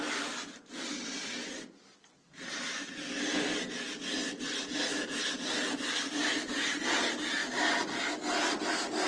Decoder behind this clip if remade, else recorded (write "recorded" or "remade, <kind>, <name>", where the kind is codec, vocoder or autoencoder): recorded